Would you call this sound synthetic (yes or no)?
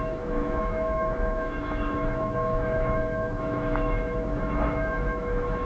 yes